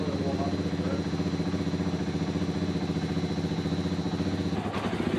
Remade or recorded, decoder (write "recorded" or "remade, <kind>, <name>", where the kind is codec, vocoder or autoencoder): recorded